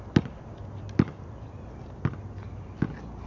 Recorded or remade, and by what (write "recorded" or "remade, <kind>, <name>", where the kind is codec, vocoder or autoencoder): recorded